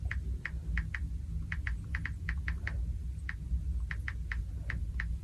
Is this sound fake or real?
real